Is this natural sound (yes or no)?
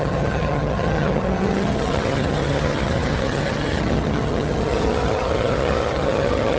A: no